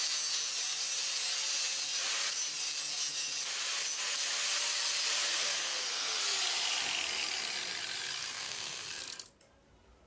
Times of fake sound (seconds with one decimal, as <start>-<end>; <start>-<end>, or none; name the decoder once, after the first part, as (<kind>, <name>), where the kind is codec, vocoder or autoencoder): 5.3-6.2 (codec, SNAC); 8.2-9.0